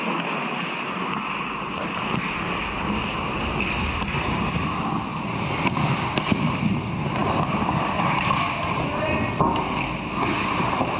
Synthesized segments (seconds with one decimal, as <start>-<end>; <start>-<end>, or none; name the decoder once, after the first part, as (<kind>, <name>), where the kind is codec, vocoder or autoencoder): none

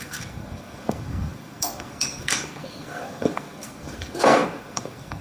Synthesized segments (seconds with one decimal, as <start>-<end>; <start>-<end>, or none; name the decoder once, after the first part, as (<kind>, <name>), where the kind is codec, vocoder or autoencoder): 0.0-5.2 (codec, SNAC)

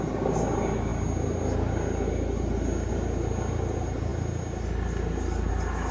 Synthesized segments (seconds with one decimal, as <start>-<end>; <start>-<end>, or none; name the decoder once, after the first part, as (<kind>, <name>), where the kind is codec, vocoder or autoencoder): none

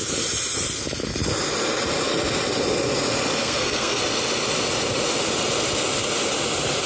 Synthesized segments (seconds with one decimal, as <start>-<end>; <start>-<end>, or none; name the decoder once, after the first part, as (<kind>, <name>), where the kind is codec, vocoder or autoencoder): 3.4-4.0 (codec, SNAC)

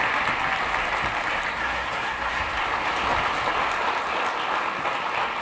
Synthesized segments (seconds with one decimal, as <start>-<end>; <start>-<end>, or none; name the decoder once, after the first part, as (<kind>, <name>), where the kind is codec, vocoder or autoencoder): 1.5-2.5 (codec, SNAC)

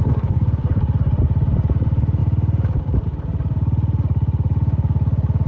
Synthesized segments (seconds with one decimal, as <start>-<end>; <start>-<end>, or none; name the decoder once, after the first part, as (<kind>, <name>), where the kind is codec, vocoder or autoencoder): 0.0-0.6 (codec, SNAC)

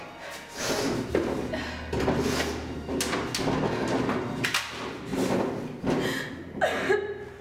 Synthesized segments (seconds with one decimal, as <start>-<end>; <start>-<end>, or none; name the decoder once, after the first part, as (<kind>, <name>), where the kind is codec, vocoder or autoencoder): none

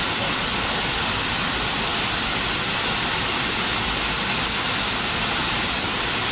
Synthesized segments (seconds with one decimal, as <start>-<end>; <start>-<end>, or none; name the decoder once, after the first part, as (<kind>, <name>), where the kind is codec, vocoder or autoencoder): none